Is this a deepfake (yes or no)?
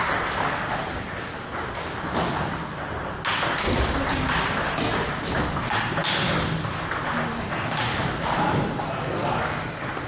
no